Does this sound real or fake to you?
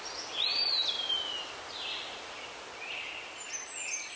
real